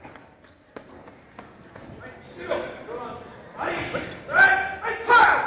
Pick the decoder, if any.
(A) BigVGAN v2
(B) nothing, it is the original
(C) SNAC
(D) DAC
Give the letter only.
B